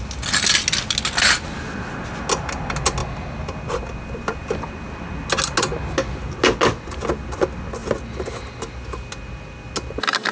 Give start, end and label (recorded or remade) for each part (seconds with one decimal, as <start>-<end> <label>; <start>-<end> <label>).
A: 0.0-10.3 recorded